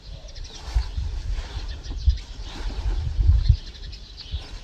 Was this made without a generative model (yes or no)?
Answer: yes